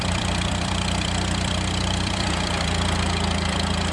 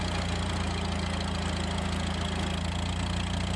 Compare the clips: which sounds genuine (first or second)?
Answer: second